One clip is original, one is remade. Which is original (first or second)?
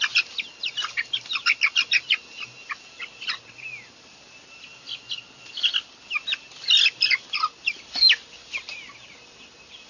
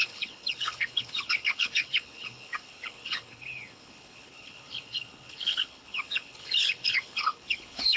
first